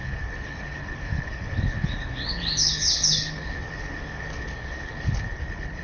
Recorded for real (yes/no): no